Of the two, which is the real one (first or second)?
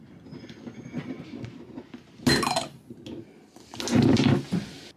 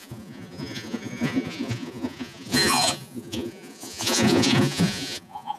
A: first